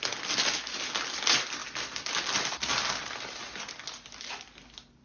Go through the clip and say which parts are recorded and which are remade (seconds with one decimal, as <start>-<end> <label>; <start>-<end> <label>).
0.0-5.0 recorded